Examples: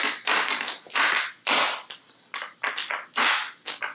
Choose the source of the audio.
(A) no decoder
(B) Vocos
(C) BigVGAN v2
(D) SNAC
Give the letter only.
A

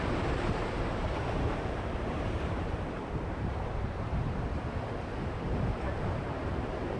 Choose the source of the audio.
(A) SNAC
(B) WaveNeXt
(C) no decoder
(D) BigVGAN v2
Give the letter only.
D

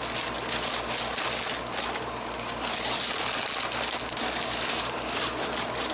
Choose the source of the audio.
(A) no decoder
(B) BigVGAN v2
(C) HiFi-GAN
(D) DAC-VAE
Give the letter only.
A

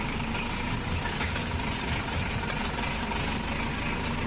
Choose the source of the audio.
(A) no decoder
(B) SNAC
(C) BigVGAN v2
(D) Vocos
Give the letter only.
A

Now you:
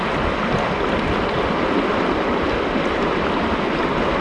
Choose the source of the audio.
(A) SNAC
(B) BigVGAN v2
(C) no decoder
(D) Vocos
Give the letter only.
C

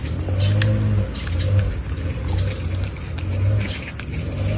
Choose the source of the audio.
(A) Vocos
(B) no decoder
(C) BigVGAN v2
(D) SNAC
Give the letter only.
B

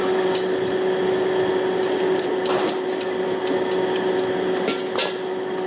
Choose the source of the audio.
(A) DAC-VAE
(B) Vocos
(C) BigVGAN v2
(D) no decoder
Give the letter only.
D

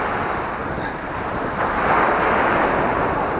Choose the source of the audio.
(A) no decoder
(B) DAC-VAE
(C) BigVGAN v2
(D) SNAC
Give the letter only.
A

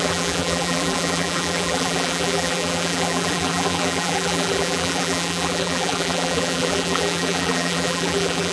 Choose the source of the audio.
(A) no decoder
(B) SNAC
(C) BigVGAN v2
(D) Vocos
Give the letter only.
C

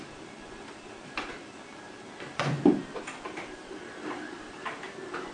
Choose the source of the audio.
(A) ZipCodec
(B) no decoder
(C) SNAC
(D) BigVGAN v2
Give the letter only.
D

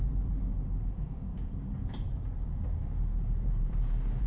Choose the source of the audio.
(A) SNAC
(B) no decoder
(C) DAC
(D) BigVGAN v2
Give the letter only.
D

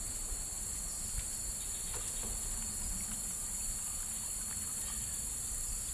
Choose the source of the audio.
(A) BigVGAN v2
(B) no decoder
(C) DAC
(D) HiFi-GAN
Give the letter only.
A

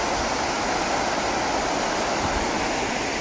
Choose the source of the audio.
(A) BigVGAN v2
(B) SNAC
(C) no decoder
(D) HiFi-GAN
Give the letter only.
C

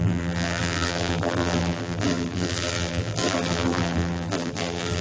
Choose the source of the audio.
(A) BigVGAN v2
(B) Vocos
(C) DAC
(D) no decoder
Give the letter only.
A